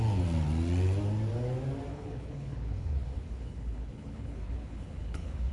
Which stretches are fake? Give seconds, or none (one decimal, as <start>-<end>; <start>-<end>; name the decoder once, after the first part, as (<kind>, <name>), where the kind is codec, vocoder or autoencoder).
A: 1.9-5.5 (codec, HILCodec)